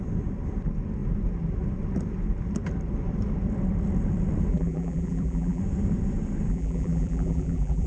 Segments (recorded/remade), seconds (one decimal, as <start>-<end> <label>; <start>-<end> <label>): 0.0-4.5 recorded; 4.5-5.6 remade; 5.6-6.5 recorded; 6.5-7.9 remade